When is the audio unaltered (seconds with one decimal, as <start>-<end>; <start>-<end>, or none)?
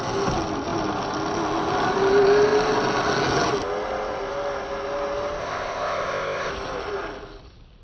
0.0-5.4; 6.5-7.8